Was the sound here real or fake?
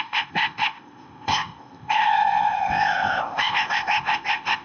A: fake